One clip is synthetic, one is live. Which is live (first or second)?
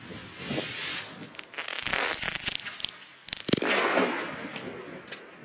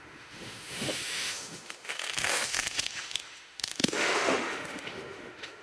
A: first